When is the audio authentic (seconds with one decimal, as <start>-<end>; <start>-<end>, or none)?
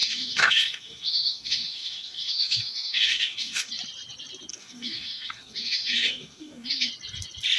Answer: 3.7-4.5; 6.9-7.6